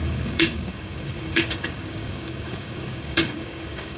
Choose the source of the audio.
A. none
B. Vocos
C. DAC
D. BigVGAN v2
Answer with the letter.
C